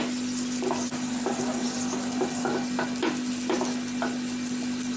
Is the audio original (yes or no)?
yes